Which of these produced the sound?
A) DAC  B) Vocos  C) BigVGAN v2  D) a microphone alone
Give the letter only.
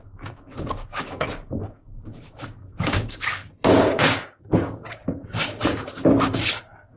A